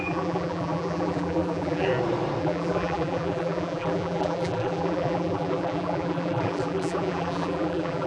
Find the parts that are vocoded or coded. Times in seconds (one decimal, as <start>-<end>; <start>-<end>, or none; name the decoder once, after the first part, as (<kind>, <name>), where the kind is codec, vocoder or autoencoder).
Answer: 0.0-1.9 (vocoder, BigVGAN v2); 2.4-8.1